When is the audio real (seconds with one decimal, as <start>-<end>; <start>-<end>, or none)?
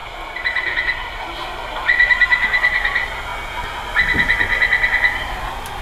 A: 1.2-5.8